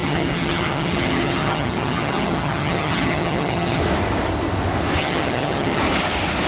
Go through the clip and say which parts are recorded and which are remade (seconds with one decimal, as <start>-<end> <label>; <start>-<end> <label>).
0.0-3.8 remade; 3.8-5.0 recorded; 5.0-5.8 remade; 5.8-6.5 recorded